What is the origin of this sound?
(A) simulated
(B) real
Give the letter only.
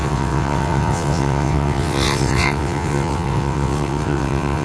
A